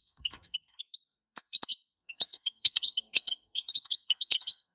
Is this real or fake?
fake